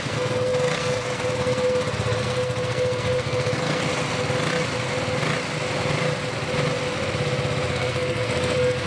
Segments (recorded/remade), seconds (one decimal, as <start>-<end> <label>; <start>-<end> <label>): 0.0-3.9 remade; 3.9-7.7 recorded; 7.7-8.9 remade